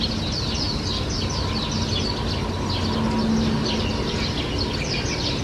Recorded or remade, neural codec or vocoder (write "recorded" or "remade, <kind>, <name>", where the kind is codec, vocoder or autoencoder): recorded